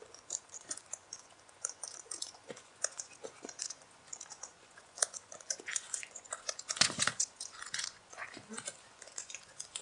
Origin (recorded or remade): remade